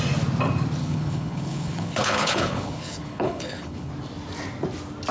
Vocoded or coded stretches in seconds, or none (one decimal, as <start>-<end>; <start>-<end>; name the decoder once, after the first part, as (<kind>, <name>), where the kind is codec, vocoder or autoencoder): 0.8-3.9 (codec, HILCodec)